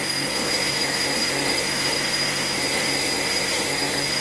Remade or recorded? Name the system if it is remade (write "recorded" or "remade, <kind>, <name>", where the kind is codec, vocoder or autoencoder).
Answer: remade, codec, SNAC